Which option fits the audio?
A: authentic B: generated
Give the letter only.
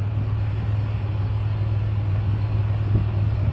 A